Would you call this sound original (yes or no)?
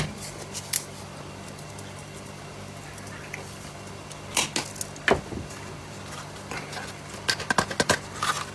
yes